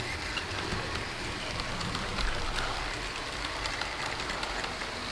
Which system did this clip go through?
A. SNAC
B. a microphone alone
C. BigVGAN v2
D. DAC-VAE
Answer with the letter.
C